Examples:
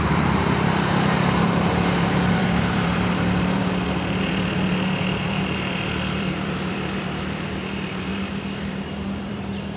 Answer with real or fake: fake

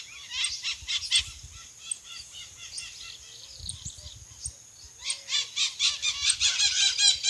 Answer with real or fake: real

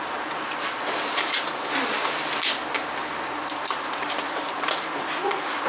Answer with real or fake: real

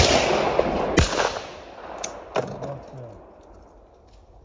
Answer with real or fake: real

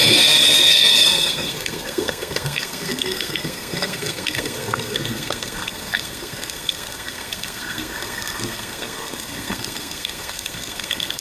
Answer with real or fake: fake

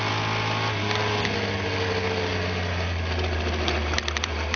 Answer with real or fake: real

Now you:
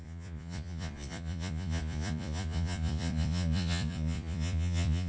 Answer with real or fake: fake